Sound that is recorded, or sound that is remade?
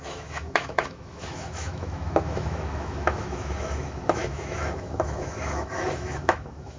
remade